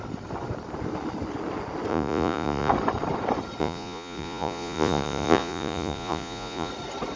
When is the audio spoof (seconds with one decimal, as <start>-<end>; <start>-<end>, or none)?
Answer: 1.9-2.7; 3.6-6.7